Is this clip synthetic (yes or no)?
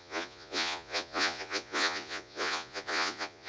yes